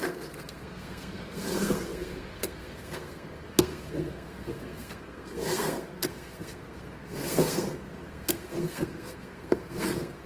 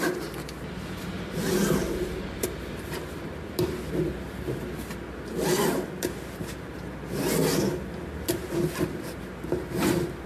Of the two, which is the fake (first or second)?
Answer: first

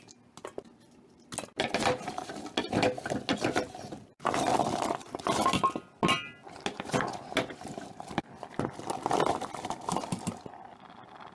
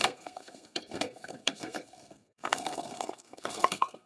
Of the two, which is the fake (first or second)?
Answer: second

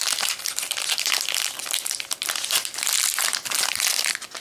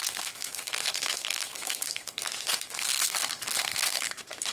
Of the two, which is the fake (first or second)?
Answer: second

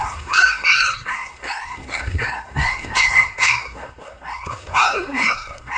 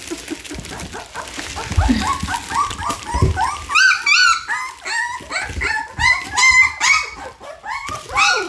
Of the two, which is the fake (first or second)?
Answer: first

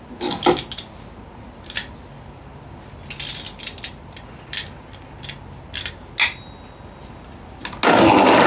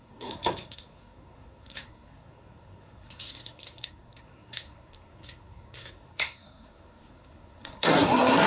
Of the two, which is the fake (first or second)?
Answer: second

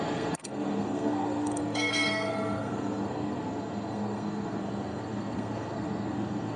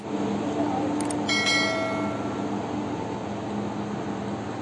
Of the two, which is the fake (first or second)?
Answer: first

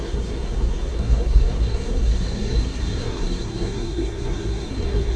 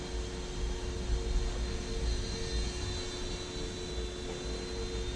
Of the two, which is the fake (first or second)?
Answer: first